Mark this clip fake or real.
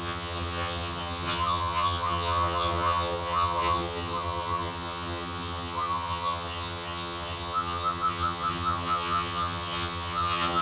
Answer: fake